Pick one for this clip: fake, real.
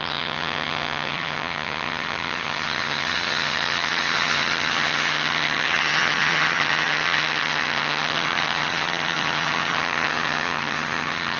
fake